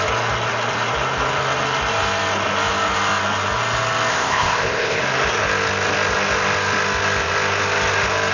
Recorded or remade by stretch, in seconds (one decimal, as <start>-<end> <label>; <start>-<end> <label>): 0.0-4.1 recorded; 4.1-5.0 remade; 5.0-8.3 recorded

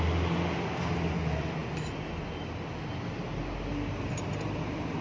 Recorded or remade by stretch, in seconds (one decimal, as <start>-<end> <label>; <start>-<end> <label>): 0.0-1.6 recorded; 1.6-2.2 remade; 2.2-3.7 recorded; 3.7-5.0 remade

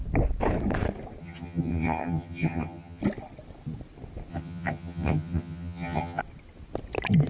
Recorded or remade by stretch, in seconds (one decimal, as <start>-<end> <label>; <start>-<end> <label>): 0.0-1.2 recorded; 1.2-3.0 remade; 3.0-4.3 recorded; 4.3-6.2 remade; 6.2-7.3 recorded

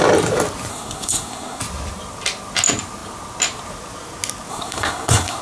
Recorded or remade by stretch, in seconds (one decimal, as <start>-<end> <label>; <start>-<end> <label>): 0.0-0.7 recorded; 0.7-1.6 remade; 1.6-4.5 recorded; 4.5-5.4 remade

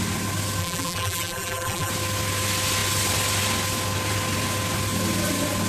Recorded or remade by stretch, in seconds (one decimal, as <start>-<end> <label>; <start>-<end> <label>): 0.0-0.6 recorded; 0.6-1.9 remade; 1.9-5.7 recorded

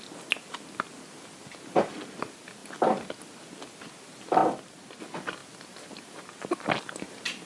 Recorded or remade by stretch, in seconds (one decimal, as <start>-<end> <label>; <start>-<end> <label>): 0.0-7.5 recorded

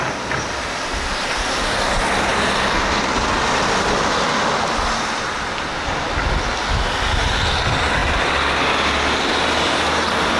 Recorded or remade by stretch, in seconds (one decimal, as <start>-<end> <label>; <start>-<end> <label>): 0.0-10.4 recorded

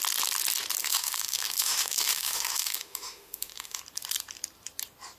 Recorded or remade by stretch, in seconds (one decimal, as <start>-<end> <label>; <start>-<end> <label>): 0.0-0.8 recorded; 0.8-3.8 remade; 3.8-5.2 recorded